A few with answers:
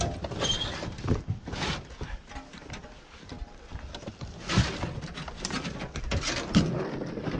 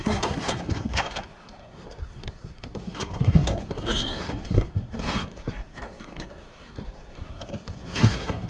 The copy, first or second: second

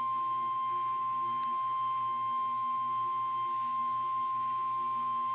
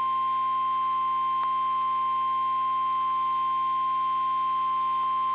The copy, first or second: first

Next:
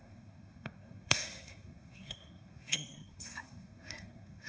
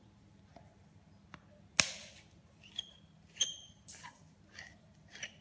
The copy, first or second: first